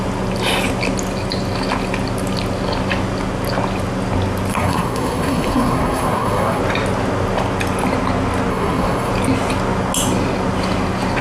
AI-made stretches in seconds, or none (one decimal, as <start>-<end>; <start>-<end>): 4.5-6.6; 8.5-9.1